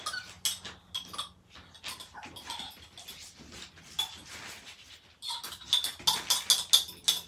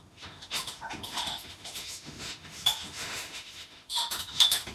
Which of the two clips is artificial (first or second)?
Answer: second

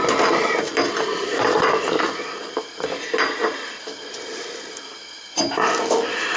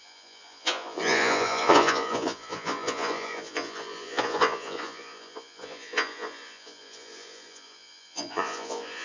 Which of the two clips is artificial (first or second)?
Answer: second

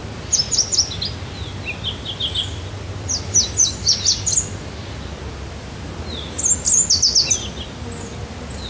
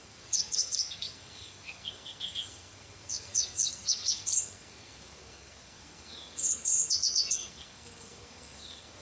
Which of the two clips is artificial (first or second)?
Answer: second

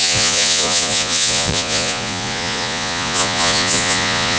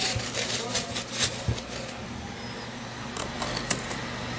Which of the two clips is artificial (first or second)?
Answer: first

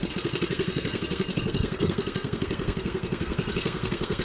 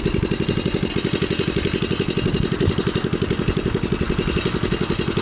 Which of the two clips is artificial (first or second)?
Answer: first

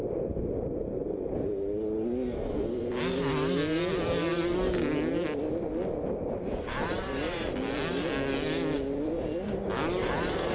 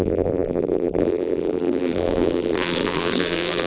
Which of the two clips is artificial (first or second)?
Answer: second